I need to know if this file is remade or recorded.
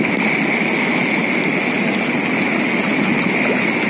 recorded